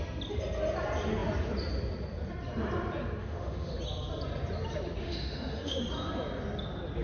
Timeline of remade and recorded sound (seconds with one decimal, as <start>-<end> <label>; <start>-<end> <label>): 0.0-3.2 recorded; 3.2-3.8 remade; 3.8-5.0 recorded; 5.0-5.8 remade; 5.8-7.0 recorded